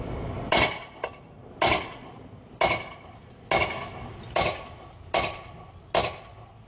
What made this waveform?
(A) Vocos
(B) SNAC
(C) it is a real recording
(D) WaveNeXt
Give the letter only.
C